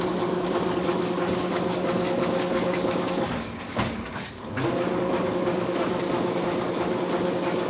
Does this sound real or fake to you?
fake